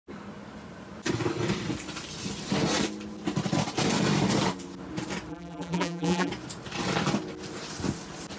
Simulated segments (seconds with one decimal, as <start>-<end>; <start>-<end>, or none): 5.3-6.3

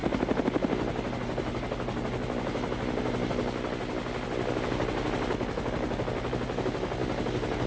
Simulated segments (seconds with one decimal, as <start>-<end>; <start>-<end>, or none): none

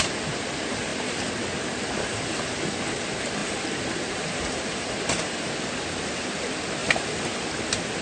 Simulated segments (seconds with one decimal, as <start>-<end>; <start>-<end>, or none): 3.4-5.4; 6.8-7.4

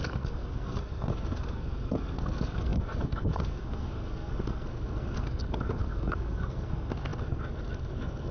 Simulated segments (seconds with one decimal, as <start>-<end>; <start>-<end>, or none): 0.0-8.3

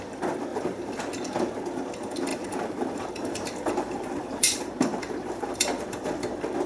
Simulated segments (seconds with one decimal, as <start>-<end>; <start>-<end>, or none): 0.5-1.0; 2.3-6.3

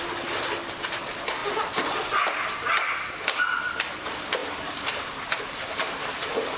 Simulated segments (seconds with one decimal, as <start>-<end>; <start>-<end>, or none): none